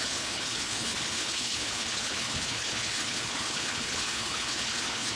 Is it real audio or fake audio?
fake